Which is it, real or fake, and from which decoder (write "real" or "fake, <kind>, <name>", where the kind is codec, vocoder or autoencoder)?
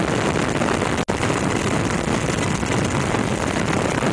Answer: real